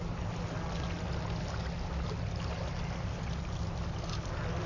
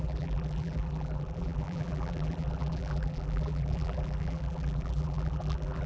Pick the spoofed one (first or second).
second